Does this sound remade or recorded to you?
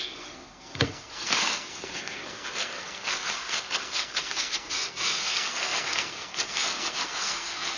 remade